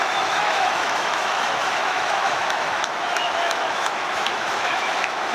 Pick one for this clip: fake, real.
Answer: fake